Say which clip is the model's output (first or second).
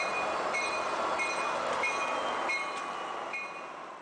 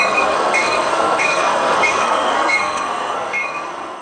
second